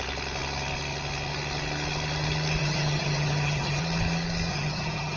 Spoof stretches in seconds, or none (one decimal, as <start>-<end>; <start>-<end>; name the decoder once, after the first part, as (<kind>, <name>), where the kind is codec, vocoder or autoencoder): 2.6-3.8 (vocoder, HiFi-GAN); 4.5-5.2